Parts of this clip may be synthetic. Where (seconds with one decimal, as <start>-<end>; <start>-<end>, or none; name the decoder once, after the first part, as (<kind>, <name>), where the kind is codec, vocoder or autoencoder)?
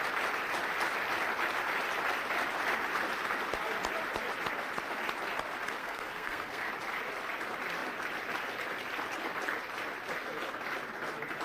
5.8-6.7 (codec, SNAC)